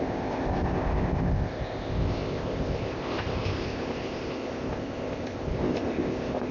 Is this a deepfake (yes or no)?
yes